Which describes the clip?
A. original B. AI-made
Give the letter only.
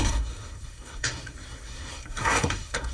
B